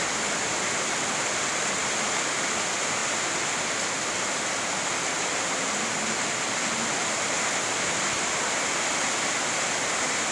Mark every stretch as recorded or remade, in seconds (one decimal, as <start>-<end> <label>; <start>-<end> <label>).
0.0-10.3 remade